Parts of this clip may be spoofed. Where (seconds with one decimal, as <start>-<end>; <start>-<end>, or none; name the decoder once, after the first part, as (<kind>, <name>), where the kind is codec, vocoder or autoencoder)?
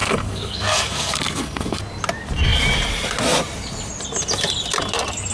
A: 0.0-1.8 (codec, SNAC)